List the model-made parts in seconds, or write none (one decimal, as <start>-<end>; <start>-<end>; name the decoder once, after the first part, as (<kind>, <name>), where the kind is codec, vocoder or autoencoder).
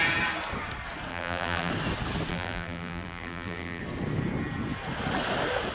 1.1-1.7 (vocoder, BigVGAN v2); 2.3-3.8